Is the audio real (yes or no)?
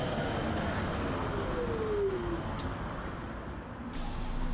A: yes